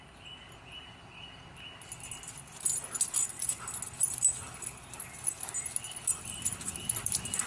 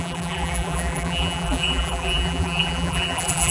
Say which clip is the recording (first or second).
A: first